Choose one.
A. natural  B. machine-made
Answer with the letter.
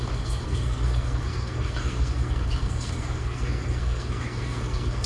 B